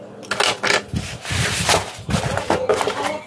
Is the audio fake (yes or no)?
no